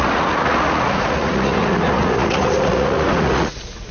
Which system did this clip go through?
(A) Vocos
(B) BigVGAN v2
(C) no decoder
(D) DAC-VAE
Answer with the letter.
A